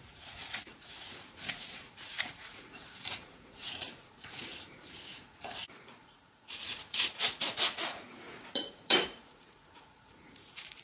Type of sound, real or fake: fake